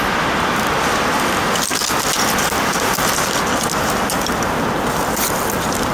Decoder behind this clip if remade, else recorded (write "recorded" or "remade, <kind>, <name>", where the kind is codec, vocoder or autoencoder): recorded